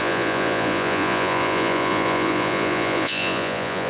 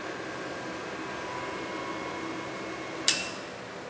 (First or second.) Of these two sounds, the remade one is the first